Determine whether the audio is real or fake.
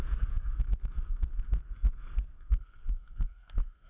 fake